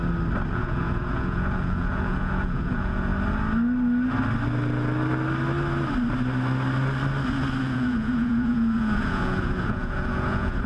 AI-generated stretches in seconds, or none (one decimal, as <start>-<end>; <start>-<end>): 0.5-3.1; 7.6-10.7